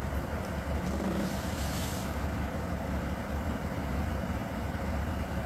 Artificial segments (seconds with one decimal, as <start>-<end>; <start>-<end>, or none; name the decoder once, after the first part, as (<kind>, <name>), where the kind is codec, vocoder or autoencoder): 4.4-5.1 (vocoder, BigVGAN v2)